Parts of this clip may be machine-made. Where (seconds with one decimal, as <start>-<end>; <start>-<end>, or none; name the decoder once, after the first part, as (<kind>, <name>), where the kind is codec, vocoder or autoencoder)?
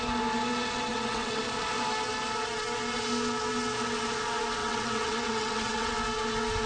0.9-1.4 (vocoder, WaveNeXt); 4.6-5.9